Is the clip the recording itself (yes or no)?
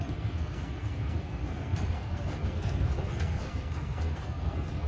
no